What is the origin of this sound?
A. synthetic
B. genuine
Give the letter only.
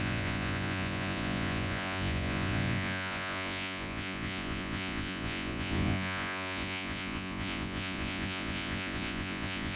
A